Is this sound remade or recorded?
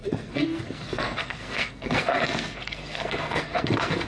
remade